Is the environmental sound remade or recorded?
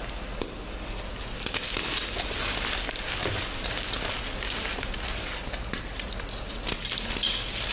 recorded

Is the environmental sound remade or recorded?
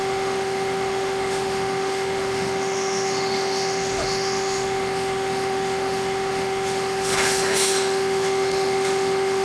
remade